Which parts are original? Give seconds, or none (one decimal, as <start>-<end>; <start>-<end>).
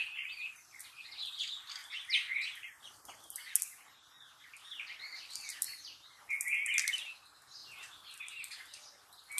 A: 0.0-9.4